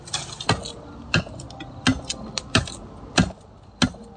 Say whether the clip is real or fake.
real